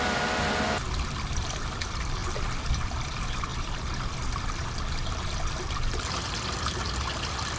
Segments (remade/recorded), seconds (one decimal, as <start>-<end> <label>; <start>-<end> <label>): 0.0-2.2 recorded; 2.2-2.7 remade; 2.7-7.6 recorded